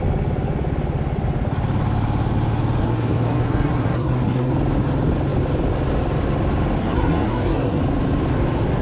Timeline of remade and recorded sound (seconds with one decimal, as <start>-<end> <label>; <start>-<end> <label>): 0.0-2.8 recorded; 2.8-4.5 remade; 4.5-6.8 recorded; 6.8-7.8 remade; 7.8-8.8 recorded